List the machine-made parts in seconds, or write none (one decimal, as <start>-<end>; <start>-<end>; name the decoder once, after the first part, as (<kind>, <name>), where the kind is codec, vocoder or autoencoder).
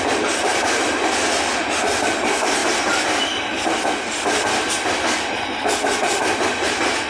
0.5-1.0 (vocoder, BigVGAN v2)